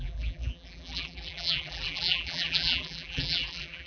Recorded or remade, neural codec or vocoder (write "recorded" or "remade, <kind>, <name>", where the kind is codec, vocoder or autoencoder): remade, vocoder, BigVGAN v2